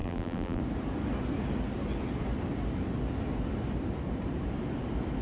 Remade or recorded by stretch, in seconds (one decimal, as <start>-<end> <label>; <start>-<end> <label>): 0.0-0.6 remade; 0.6-5.2 recorded